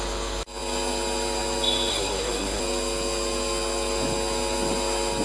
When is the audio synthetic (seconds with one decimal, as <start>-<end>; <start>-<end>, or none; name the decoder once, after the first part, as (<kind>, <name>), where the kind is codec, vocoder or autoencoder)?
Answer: 1.9-2.6 (codec, SNAC)